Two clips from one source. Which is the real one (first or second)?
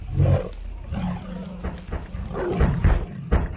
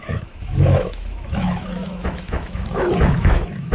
first